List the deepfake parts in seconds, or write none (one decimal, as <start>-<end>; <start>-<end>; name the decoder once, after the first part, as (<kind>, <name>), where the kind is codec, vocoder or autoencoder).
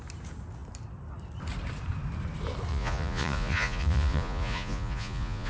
2.7-5.5 (vocoder, Vocos)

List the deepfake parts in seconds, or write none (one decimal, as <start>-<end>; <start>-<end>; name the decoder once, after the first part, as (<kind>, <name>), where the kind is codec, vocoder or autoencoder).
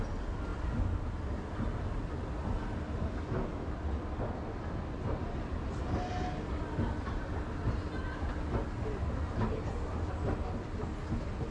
none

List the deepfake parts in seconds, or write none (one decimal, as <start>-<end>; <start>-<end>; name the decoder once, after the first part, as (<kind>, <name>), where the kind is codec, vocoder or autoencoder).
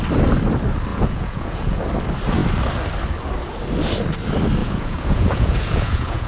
0.9-1.8 (vocoder, Vocos); 4.6-6.3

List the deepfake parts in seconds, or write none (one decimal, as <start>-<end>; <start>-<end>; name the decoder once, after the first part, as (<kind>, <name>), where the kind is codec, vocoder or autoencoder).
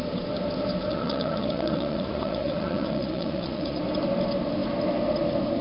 0.9-3.8 (vocoder, Vocos)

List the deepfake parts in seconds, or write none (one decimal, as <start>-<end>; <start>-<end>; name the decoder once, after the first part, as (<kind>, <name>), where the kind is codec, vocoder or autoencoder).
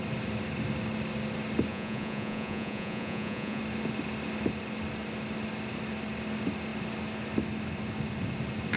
1.7-3.6 (vocoder, Vocos)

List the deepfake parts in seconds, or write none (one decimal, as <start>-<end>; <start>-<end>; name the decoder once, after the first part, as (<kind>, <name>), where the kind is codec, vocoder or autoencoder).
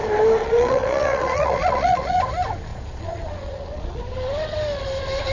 0.4-2.2 (vocoder, Vocos); 2.7-4.0